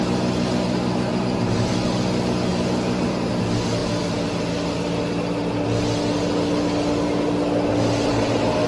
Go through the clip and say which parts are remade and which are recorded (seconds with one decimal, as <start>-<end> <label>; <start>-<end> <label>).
0.0-1.1 recorded; 1.1-1.7 remade; 1.7-2.5 recorded; 2.5-3.4 remade; 3.4-8.7 recorded